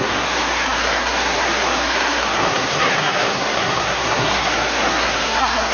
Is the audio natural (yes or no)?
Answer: no